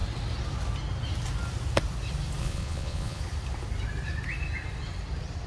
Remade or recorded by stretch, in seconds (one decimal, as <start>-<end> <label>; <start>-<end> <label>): 0.0-2.4 recorded; 2.4-3.2 remade; 3.2-5.5 recorded

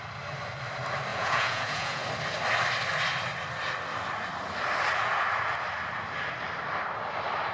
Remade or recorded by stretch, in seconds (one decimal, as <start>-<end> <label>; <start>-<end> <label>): 0.0-1.1 recorded; 1.1-2.0 remade; 2.0-7.5 recorded

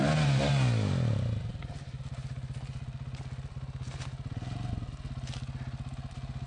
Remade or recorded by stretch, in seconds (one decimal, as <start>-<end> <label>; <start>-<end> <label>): 0.0-6.5 recorded